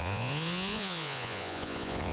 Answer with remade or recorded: remade